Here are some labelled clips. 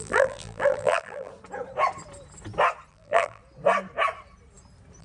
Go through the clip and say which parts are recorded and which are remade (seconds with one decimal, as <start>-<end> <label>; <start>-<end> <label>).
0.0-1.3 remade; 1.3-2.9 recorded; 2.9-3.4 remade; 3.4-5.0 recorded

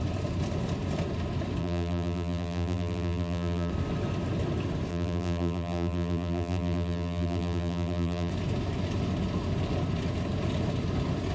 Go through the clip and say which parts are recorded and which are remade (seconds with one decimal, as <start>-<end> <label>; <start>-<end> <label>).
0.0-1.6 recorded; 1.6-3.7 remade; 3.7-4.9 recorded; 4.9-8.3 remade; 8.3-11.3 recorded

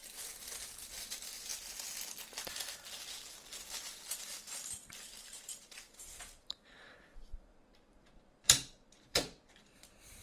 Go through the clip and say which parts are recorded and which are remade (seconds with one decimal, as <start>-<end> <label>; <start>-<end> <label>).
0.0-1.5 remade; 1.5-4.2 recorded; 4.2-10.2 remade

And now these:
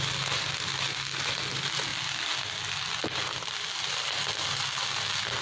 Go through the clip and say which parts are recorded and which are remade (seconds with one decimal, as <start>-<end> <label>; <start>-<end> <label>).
0.0-5.4 recorded